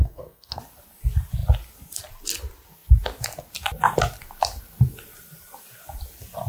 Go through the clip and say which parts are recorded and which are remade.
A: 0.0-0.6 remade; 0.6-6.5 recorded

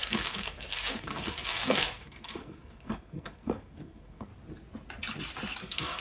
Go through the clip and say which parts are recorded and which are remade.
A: 0.0-4.3 remade; 4.3-5.6 recorded; 5.6-6.0 remade

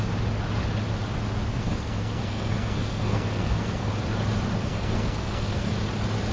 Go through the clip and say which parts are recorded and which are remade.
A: 0.0-1.5 recorded; 1.5-3.9 remade; 3.9-4.6 recorded; 4.6-5.7 remade; 5.7-6.3 recorded

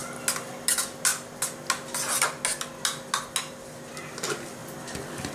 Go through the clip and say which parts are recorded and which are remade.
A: 0.0-5.3 recorded